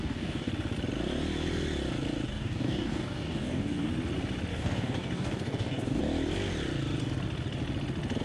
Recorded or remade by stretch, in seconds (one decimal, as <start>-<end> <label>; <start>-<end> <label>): 0.0-0.5 remade; 0.5-2.3 recorded; 2.3-3.9 remade; 3.9-4.5 recorded; 4.5-6.0 remade; 6.0-8.2 recorded